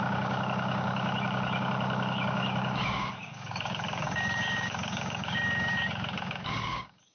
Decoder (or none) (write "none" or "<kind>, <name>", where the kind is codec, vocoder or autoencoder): codec, DAC